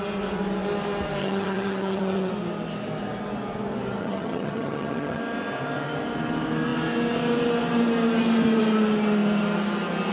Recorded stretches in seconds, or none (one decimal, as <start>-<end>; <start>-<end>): 0.0-1.2; 2.3-4.0; 5.2-10.1